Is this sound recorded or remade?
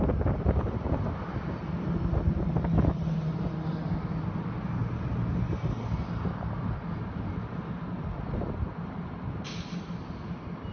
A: recorded